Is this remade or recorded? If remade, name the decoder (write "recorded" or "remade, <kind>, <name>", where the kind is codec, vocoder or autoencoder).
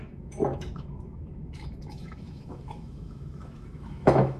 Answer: remade, autoencoder, DAC-VAE